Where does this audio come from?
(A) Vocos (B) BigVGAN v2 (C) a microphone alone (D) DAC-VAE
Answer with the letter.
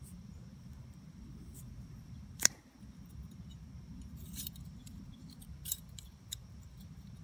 B